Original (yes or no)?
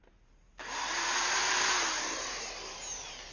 yes